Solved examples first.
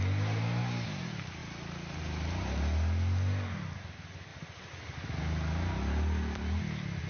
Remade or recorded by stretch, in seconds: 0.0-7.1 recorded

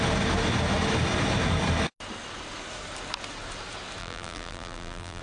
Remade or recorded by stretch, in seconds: 0.0-4.0 recorded; 4.0-5.2 remade

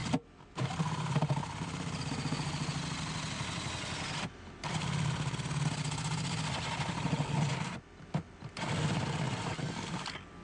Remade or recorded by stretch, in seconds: 0.0-2.1 remade; 2.1-10.4 recorded

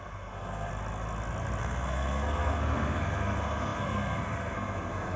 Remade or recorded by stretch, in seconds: 0.0-0.7 remade; 0.7-1.6 recorded; 1.6-5.2 remade

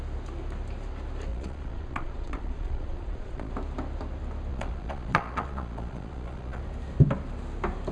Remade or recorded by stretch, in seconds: 0.0-1.3 recorded; 1.3-3.5 remade; 3.5-4.5 recorded; 4.5-6.6 remade; 6.6-7.9 recorded

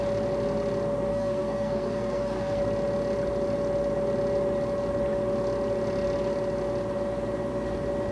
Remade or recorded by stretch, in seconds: 0.0-1.1 recorded; 1.1-2.6 remade; 2.6-8.1 recorded

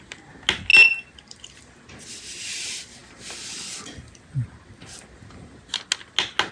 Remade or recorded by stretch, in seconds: 0.0-6.5 recorded

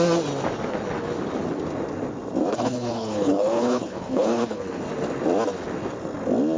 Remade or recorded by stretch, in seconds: 0.0-2.5 recorded; 2.5-4.8 remade; 4.8-6.6 recorded